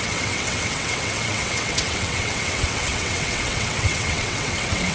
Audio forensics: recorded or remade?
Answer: remade